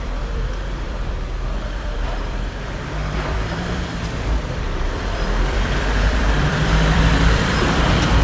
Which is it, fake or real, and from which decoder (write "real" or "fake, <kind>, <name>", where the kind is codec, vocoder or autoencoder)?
fake, vocoder, BigVGAN v2